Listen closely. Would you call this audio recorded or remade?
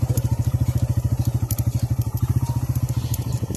remade